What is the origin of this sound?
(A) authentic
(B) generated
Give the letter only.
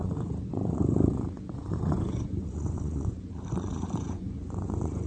B